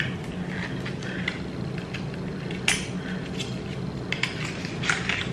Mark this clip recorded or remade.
recorded